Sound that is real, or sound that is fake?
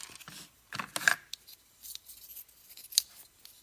real